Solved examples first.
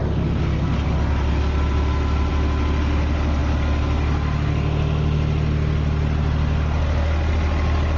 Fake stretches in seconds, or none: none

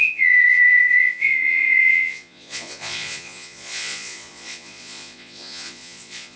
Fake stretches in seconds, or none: 0.0-6.4 (vocoder, Vocos)

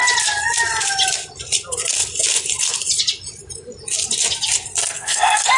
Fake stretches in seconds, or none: 4.8-5.6 (codec, SNAC)

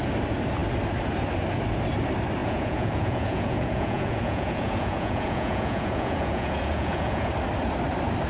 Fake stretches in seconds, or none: 2.4-7.3 (vocoder, Vocos)

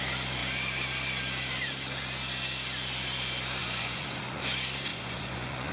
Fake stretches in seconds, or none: 3.6-4.4 (vocoder, Vocos); 4.9-5.7

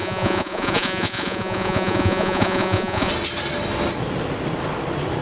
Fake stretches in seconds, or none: 0.0-3.1 (vocoder, Vocos)

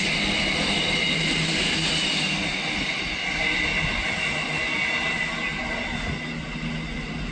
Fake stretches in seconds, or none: none